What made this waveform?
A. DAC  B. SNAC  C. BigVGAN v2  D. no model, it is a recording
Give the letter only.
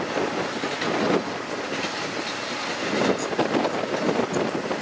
D